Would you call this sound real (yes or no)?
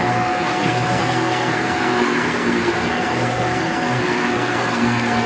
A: no